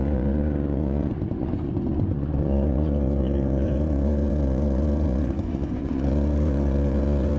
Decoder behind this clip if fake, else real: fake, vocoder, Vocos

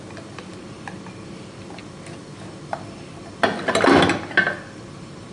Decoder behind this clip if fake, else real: real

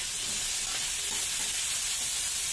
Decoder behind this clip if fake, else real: real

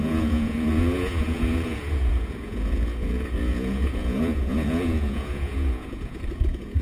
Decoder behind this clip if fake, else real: fake, vocoder, Vocos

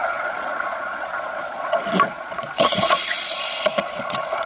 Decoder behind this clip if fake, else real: fake, vocoder, Vocos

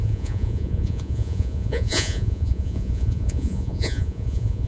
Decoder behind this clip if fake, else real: fake, vocoder, Vocos